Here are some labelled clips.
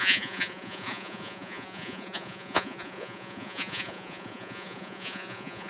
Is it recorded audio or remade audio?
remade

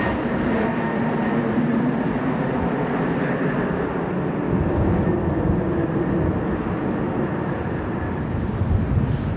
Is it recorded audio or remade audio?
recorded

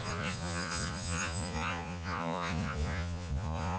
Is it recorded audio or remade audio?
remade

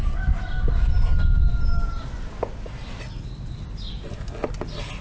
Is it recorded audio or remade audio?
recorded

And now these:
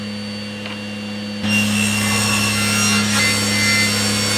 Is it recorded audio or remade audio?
recorded